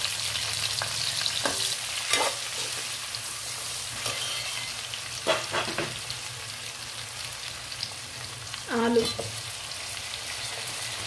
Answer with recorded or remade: recorded